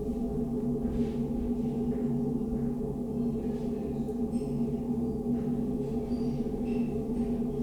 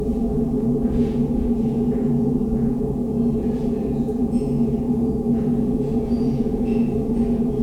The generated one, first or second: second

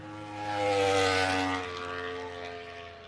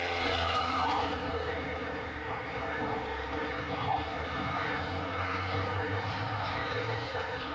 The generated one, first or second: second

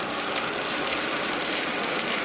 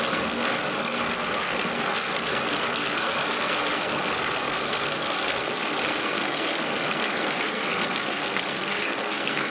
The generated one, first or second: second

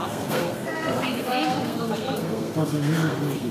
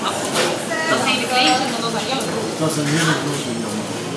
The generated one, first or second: first